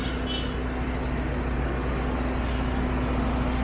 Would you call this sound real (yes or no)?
yes